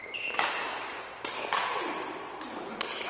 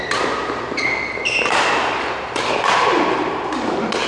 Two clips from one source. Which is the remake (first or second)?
second